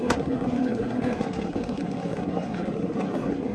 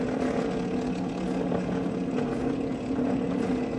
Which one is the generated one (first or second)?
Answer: first